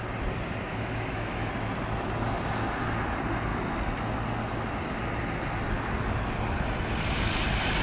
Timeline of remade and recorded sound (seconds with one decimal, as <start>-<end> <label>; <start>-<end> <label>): 0.0-0.7 recorded; 0.7-1.5 remade; 1.5-7.8 recorded